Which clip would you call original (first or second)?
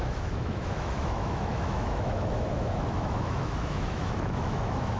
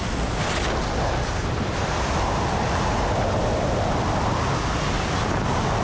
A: second